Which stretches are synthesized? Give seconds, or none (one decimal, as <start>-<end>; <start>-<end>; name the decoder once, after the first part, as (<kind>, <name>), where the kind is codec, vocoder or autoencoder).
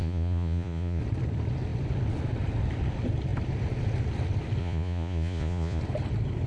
0.0-1.0 (vocoder, Vocos); 4.6-5.8